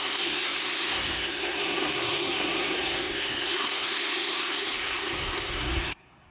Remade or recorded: remade